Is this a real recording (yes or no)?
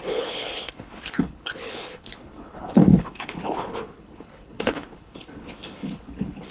no